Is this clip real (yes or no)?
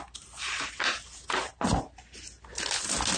yes